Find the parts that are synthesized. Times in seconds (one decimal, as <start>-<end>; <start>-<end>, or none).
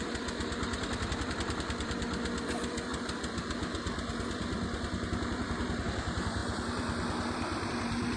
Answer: 0.0-2.9; 4.1-8.2